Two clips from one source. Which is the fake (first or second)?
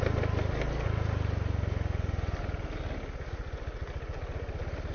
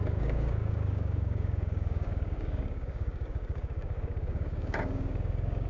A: second